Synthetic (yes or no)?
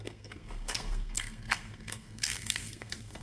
yes